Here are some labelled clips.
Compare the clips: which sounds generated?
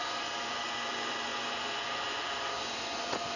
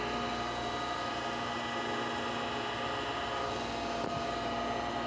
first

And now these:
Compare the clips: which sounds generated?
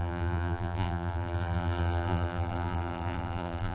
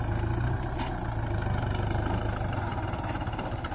first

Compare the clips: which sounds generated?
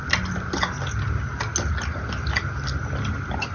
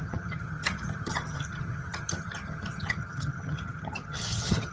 second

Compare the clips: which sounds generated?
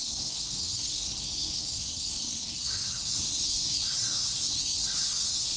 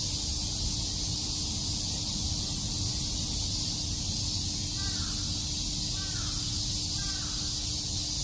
first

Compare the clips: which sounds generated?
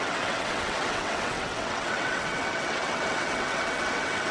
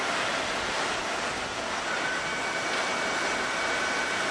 first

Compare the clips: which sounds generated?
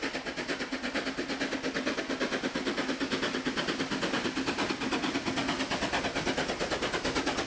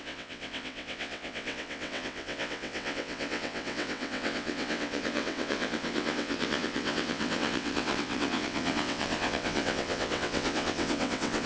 second